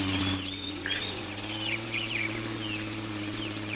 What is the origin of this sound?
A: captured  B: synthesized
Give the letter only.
B